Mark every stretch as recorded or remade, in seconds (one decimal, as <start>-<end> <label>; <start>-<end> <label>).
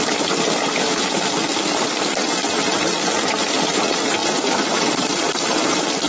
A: 0.0-4.2 recorded; 4.2-6.1 remade